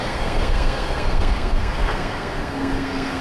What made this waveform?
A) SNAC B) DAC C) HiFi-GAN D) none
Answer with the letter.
A